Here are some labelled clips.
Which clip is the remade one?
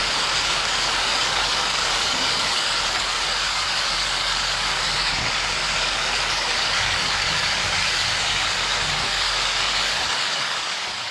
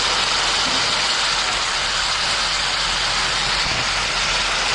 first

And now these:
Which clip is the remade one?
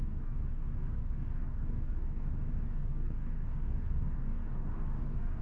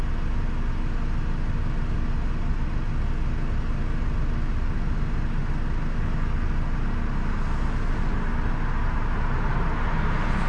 first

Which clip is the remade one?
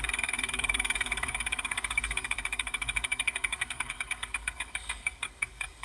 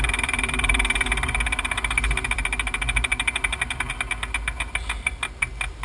first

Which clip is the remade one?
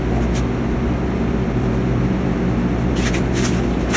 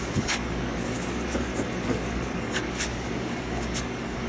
second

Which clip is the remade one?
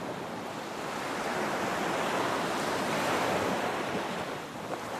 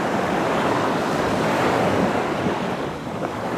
second